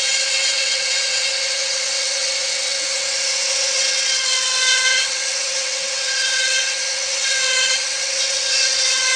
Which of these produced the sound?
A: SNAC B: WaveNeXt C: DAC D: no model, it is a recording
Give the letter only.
B